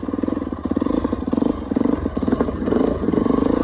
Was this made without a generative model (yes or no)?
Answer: no